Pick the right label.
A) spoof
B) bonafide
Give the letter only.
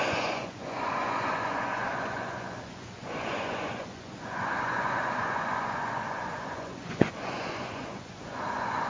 A